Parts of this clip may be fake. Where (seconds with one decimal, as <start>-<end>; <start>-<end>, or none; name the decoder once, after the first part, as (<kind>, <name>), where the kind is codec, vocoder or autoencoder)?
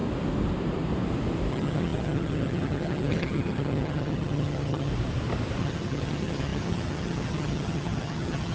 1.5-4.9 (vocoder, HiFi-GAN); 5.6-8.5